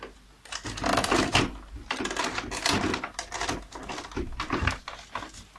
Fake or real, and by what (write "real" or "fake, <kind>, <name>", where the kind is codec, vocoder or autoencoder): real